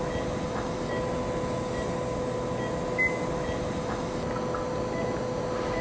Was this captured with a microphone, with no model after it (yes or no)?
yes